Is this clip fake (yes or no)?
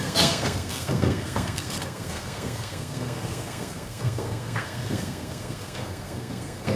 yes